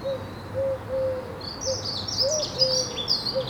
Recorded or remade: recorded